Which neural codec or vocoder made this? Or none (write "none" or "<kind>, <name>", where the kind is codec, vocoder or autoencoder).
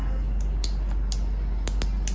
none